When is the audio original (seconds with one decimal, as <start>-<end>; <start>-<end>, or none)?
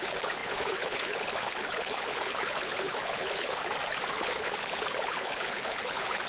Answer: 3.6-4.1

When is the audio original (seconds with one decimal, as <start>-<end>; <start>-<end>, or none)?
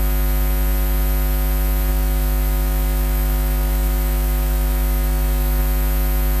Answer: 0.0-1.9; 5.6-6.4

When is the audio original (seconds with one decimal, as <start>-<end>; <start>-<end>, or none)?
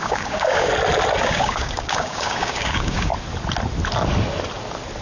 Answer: 0.7-1.2; 3.1-5.0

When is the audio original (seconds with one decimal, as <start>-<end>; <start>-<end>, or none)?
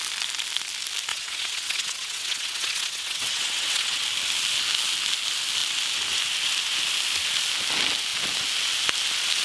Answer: 0.0-1.1; 4.0-9.4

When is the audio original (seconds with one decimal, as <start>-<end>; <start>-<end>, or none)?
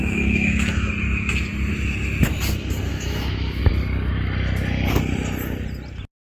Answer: 0.9-2.9; 3.6-6.3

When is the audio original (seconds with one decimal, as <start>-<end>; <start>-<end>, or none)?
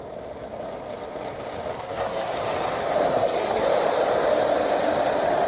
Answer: 0.0-1.7; 2.3-3.1; 3.6-5.5